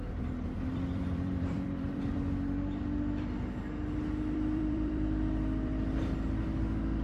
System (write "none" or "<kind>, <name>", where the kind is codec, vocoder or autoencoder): vocoder, BigVGAN v2